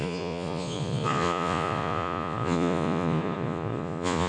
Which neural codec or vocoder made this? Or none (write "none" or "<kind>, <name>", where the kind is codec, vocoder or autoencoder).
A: vocoder, Vocos